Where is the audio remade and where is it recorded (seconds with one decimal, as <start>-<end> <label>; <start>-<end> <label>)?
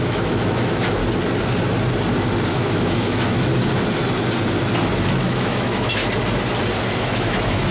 0.0-1.0 remade; 1.0-2.5 recorded; 2.5-3.5 remade; 3.5-5.1 recorded; 5.1-6.0 remade; 6.0-7.0 recorded; 7.0-7.7 remade